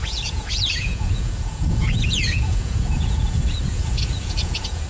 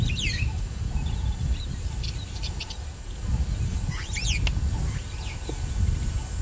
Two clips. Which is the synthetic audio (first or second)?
first